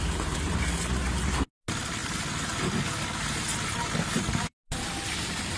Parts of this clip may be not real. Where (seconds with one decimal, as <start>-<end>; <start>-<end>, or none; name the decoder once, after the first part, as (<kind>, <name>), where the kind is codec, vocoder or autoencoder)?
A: none